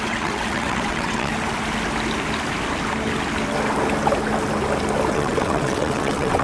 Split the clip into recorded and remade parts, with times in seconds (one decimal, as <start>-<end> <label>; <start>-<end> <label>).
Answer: 0.0-1.3 remade; 1.3-5.1 recorded; 5.1-6.4 remade